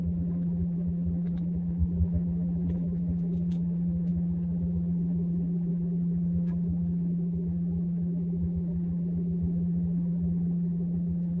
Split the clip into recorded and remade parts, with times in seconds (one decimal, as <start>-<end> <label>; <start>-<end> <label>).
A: 0.0-11.4 remade